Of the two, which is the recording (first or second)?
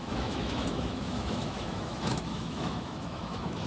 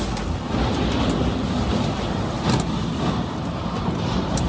second